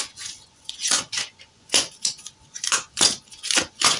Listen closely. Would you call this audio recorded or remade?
remade